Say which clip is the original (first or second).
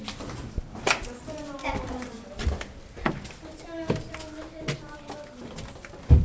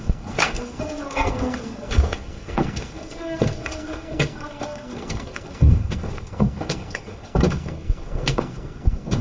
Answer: first